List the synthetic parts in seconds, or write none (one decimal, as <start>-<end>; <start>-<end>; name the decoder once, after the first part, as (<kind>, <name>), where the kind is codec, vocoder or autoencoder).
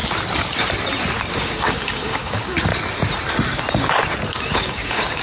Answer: 1.3-2.7 (codec, DAC); 4.3-5.2